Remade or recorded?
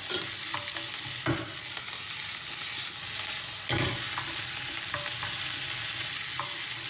recorded